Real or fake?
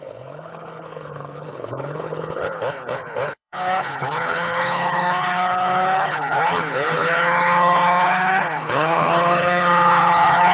fake